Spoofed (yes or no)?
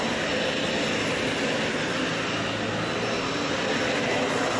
no